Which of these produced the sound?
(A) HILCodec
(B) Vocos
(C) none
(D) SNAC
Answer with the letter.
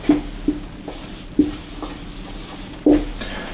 C